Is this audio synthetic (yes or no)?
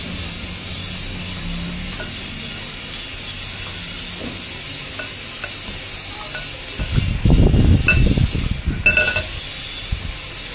no